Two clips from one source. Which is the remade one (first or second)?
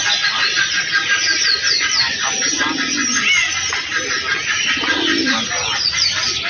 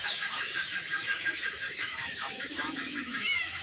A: second